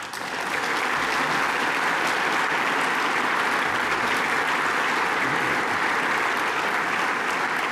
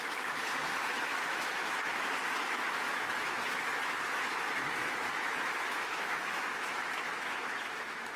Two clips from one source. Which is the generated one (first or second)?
second